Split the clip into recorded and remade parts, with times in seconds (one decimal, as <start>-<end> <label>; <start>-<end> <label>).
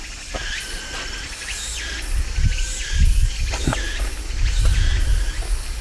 0.0-5.8 recorded